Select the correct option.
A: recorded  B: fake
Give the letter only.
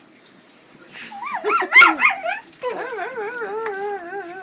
A